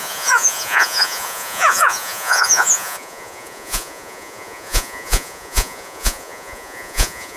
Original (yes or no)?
no